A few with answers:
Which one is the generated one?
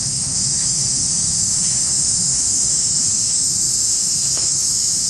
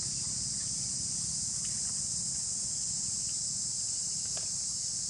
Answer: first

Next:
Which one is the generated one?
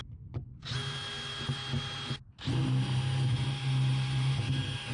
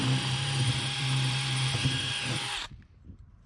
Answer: second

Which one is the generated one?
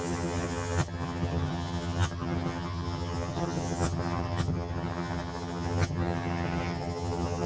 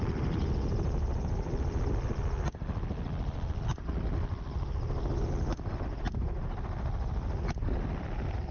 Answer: first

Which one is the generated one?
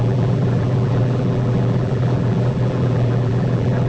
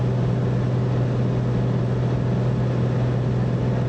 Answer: first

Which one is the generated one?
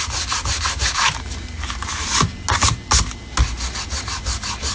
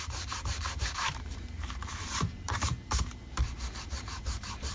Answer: second